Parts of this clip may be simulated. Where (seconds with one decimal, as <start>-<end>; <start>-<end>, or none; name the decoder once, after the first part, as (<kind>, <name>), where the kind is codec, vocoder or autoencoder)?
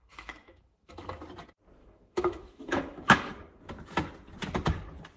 0.0-1.2 (autoencoder, DAC-VAE); 1.8-3.3